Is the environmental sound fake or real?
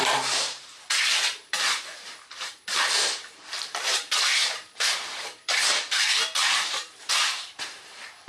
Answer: fake